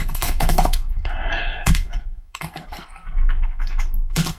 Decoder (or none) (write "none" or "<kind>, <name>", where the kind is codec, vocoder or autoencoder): codec, SNAC